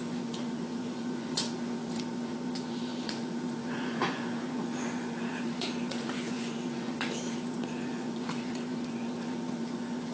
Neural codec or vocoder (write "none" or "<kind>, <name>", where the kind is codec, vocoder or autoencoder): vocoder, Vocos